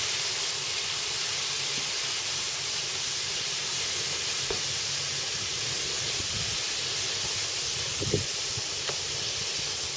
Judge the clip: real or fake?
real